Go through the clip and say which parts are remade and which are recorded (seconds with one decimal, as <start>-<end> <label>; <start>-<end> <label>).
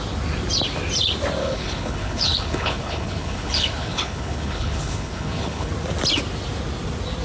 0.0-1.4 recorded; 1.4-5.7 remade; 5.7-7.2 recorded